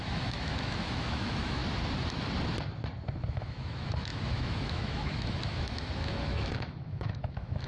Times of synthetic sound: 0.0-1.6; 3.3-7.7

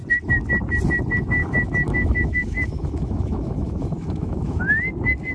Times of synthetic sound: 1.4-4.6

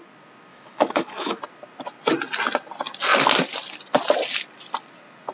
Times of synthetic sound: 0.5-1.4

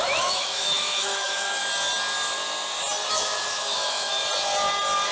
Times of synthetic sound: 0.0-1.6; 3.1-4.2